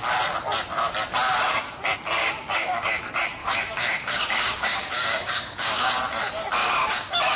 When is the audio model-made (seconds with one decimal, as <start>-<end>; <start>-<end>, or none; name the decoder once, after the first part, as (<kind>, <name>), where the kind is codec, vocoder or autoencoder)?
2.2-3.0 (codec, DAC); 3.4-5.9; 6.6-7.4